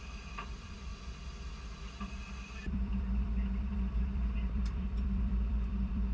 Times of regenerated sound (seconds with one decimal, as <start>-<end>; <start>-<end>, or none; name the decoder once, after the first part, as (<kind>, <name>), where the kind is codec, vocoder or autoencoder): 0.0-0.9 (vocoder, BigVGAN v2); 2.6-6.1